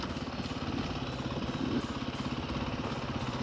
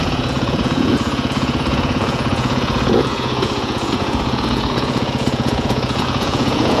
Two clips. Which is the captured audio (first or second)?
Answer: first